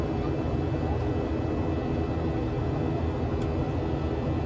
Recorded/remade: recorded